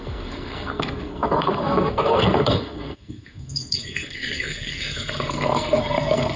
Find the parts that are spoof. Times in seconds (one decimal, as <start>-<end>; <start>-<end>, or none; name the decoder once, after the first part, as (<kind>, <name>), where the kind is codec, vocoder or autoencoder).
0.0-6.4 (codec, SNAC)